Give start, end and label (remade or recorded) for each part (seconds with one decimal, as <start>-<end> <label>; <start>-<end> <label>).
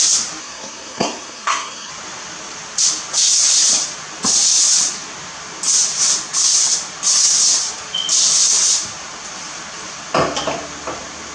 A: 0.0-0.4 recorded; 0.4-1.9 remade; 1.9-11.3 recorded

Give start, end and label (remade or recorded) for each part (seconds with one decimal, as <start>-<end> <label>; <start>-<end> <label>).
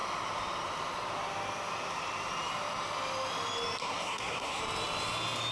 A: 0.0-3.8 recorded; 3.8-4.6 remade; 4.6-5.5 recorded